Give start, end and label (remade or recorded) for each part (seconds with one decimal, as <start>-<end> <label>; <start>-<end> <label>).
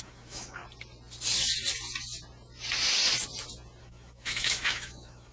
0.0-0.6 remade; 0.6-3.8 recorded; 3.8-5.3 remade